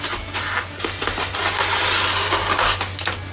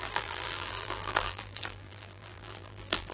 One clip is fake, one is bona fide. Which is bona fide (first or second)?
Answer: first